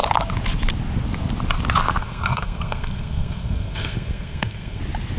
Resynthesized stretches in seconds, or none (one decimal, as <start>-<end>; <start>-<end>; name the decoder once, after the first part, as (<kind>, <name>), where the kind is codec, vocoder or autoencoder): 2.0-4.8 (codec, SNAC)